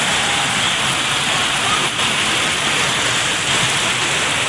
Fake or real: real